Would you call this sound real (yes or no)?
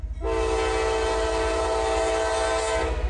yes